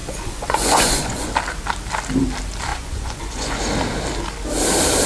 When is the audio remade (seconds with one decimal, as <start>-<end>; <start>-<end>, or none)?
0.0-1.3; 2.7-3.6